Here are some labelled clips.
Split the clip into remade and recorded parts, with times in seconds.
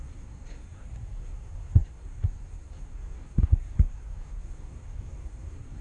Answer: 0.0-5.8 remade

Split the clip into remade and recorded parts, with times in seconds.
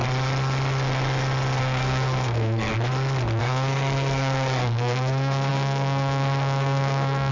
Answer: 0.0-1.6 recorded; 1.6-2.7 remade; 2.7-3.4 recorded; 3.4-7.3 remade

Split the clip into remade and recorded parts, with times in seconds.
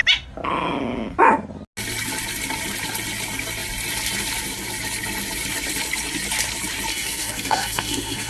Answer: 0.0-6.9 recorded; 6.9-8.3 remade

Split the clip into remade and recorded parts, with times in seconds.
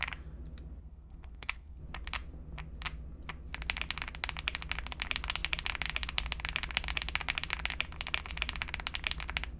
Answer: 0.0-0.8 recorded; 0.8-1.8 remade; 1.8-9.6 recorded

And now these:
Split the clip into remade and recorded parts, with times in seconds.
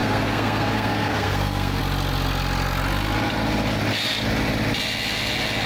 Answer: 0.0-1.8 remade; 1.8-5.7 recorded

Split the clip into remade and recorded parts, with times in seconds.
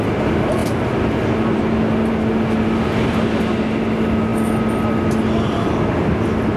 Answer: 0.0-6.6 recorded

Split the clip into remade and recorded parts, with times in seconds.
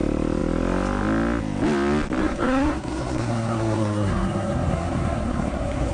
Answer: 0.0-2.2 recorded; 2.2-5.9 remade